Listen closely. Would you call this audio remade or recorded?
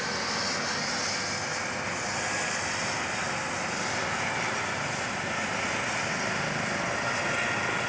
recorded